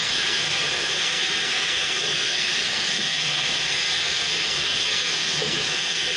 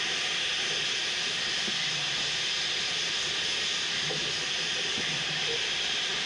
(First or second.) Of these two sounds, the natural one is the second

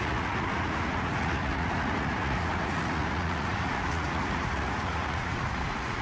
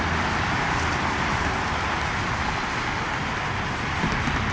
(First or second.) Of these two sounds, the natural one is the second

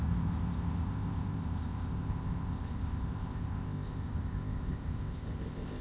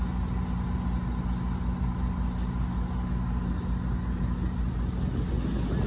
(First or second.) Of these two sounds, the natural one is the second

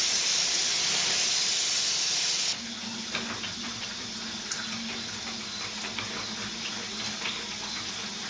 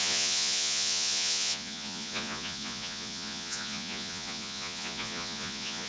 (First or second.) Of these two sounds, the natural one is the first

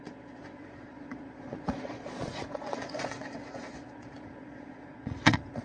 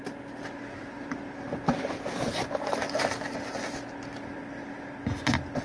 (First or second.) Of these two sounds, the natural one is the second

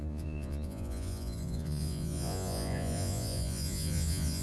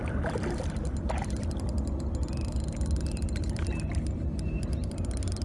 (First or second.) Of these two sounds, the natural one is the second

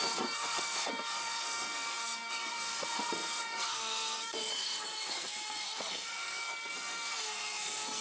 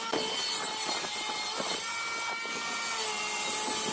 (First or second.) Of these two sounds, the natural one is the second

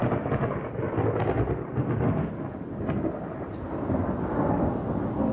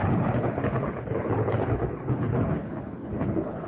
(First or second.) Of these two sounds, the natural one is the first